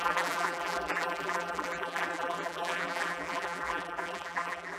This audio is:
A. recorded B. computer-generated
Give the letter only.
B